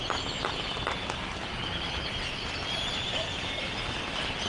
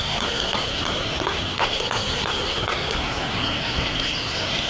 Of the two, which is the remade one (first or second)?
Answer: second